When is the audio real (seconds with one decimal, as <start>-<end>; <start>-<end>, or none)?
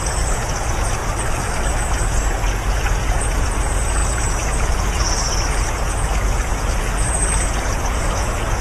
1.0-1.7